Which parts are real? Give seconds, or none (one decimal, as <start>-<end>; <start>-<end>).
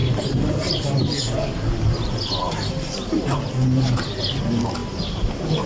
0.0-5.7